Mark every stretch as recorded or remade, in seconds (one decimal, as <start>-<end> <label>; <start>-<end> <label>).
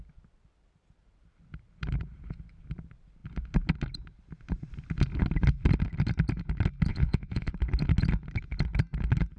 0.0-6.9 recorded; 6.9-7.5 remade; 7.5-9.4 recorded